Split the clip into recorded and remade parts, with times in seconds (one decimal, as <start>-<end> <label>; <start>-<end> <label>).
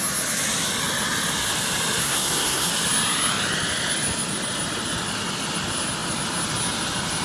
0.0-2.0 recorded; 2.0-2.7 remade; 2.7-7.2 recorded